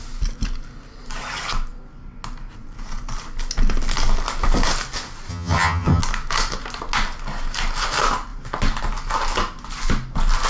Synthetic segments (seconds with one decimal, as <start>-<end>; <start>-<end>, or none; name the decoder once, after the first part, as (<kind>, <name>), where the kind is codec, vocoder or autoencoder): 5.3-6.0 (vocoder, HiFi-GAN)